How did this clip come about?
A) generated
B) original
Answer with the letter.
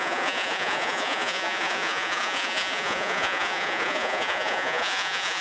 A